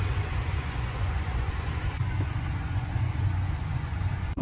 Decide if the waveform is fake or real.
fake